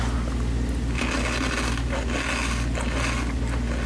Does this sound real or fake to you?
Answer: real